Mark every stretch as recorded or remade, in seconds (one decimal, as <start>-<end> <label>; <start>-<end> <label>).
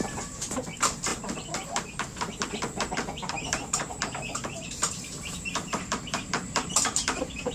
0.0-1.1 remade; 1.1-3.3 recorded; 3.3-7.5 remade